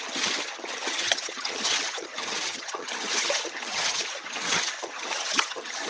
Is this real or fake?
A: fake